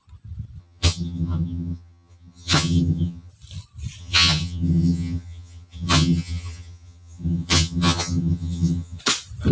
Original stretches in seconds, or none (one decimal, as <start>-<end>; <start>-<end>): 0.0-0.6; 3.3-4.0; 9.0-9.5